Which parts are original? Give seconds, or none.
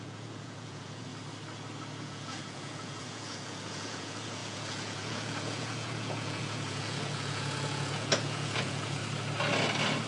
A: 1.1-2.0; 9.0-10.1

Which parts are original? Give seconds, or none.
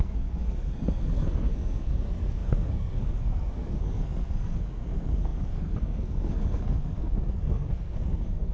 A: none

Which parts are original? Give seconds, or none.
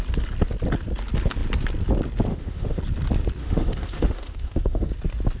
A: 0.0-2.3; 2.8-3.4; 4.9-5.4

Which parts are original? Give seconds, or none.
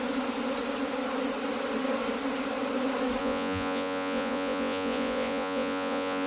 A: 0.0-3.2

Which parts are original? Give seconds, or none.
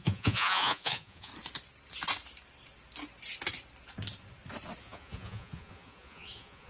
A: 1.3-4.8